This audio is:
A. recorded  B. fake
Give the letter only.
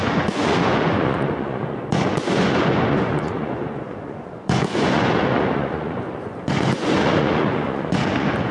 B